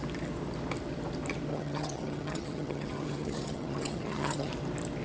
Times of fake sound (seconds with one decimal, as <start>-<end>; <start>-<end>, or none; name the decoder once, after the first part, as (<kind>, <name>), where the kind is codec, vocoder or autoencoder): 1.5-4.5 (vocoder, HiFi-GAN)